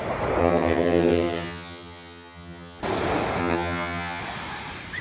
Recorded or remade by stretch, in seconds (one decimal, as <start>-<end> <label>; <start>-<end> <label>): 0.0-0.4 recorded; 0.4-2.8 remade; 2.8-3.4 recorded; 3.4-4.2 remade; 4.2-5.0 recorded